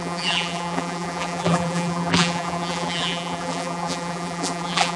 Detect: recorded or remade remade